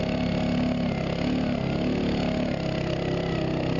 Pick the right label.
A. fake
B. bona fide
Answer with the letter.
B